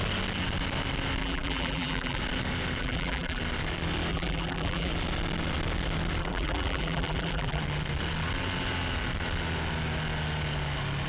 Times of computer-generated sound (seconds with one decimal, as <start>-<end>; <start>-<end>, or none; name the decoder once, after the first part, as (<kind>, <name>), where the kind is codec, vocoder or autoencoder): 1.2-2.2 (vocoder, BigVGAN v2); 2.8-3.4; 4.1-4.9; 6.2-7.6